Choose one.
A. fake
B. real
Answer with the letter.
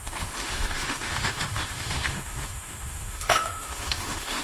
A